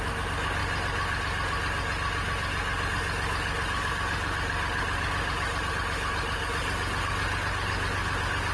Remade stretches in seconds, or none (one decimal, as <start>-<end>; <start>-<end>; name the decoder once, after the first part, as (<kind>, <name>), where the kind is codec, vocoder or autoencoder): none

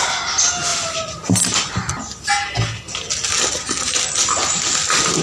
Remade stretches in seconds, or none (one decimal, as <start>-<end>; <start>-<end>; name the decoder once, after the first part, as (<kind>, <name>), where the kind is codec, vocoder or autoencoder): none

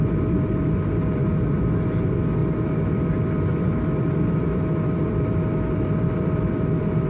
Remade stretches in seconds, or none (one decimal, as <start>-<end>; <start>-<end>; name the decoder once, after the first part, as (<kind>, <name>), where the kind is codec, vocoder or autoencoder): 0.0-7.1 (vocoder, BigVGAN v2)

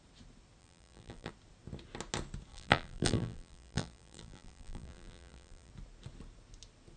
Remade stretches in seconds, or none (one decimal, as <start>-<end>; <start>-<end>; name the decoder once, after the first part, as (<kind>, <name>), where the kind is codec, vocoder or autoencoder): 0.6-1.3 (vocoder, BigVGAN v2); 2.5-5.7